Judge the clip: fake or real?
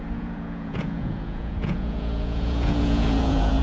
fake